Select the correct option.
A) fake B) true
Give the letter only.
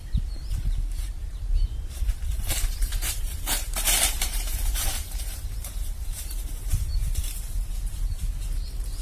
A